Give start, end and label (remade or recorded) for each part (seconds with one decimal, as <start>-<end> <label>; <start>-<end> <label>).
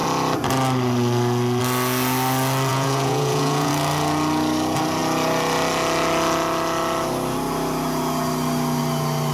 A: 0.0-2.7 recorded; 2.7-3.7 remade; 3.7-9.3 recorded